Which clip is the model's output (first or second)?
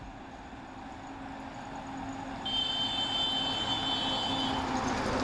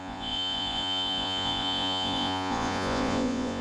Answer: second